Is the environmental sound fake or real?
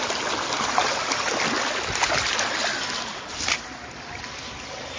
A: real